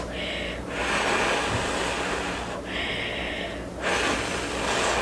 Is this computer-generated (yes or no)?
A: no